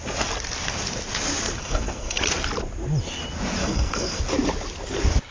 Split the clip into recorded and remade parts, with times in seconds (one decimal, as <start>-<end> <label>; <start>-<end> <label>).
0.0-1.6 recorded; 1.6-2.2 remade; 2.2-3.6 recorded; 3.6-4.2 remade; 4.2-5.3 recorded